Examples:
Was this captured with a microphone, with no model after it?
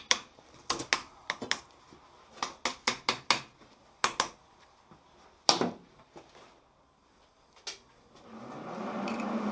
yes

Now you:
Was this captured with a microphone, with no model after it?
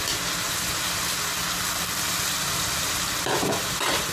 yes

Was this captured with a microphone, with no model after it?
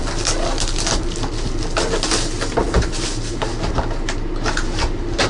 yes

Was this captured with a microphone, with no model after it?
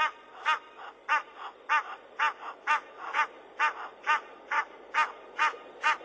yes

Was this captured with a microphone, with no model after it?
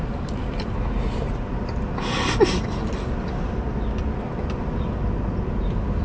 yes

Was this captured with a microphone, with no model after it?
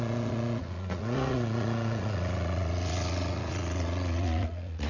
no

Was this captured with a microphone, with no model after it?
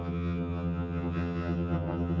no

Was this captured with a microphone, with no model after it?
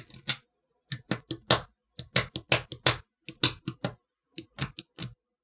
yes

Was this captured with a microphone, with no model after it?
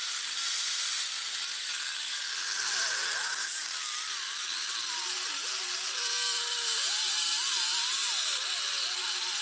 yes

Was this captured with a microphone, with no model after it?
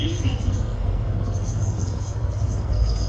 no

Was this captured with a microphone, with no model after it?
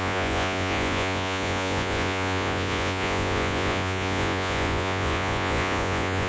no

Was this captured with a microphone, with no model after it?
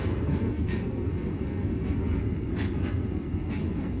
no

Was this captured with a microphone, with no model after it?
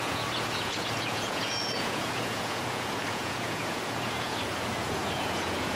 no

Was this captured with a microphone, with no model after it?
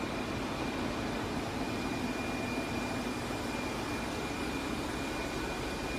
yes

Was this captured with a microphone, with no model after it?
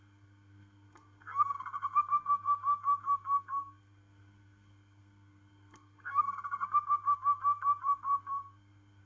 no